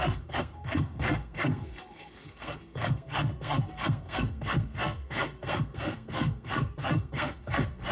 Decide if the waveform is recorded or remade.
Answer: remade